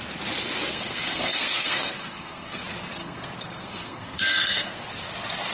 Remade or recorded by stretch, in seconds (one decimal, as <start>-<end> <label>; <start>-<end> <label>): 0.0-0.7 recorded; 0.7-2.6 remade; 2.6-3.0 recorded; 3.0-4.9 remade; 4.9-5.5 recorded

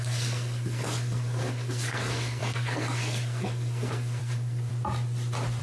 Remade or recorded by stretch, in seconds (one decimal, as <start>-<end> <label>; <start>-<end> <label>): 0.0-4.7 remade; 4.7-5.6 recorded

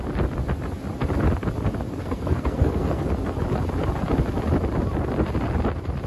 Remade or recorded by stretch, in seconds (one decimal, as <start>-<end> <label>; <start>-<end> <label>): 0.0-2.0 recorded; 2.0-3.1 remade; 3.1-6.1 recorded

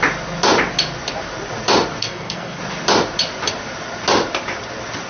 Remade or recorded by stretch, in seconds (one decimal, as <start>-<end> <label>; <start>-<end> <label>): 0.0-2.0 recorded; 2.0-2.6 remade; 2.6-5.1 recorded

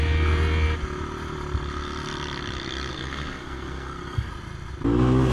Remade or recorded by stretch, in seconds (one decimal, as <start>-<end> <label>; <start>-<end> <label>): 0.0-2.9 recorded; 2.9-4.3 remade; 4.3-5.3 recorded

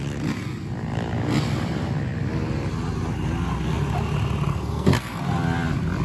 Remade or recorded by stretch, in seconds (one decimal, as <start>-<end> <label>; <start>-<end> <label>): 0.0-4.5 recorded; 4.5-5.2 remade; 5.2-6.0 recorded